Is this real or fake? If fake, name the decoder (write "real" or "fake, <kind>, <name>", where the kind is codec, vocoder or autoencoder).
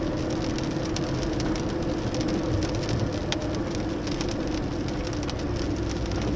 real